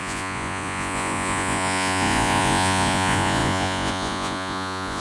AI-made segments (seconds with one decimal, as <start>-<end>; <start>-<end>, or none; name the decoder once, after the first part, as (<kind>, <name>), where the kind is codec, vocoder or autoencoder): 0.0-5.0 (vocoder, Vocos)